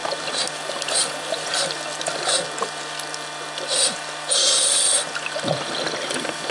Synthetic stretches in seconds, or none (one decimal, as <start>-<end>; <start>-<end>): none